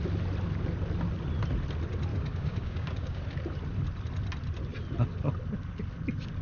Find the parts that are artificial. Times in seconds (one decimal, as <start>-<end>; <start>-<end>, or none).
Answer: 2.1-3.2

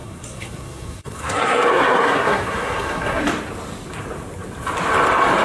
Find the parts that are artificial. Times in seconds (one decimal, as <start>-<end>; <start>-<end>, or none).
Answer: 0.0-3.2

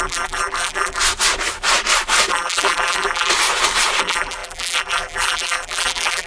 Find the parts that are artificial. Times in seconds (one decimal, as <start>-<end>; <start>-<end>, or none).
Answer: 0.0-1.0; 2.3-3.3; 4.0-6.3

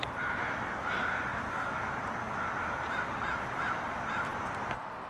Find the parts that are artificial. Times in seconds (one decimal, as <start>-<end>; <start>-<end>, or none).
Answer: none